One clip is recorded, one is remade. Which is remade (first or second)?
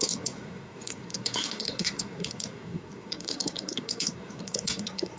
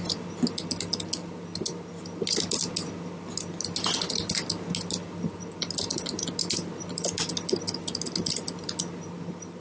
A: first